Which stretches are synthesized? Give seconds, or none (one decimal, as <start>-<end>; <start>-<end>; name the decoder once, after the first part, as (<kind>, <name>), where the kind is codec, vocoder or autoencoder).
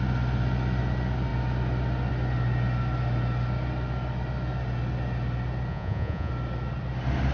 5.7-6.3 (vocoder, Vocos)